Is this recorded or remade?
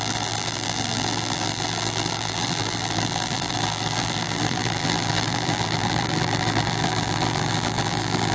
remade